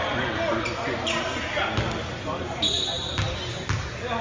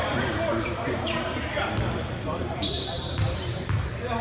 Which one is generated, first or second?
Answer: second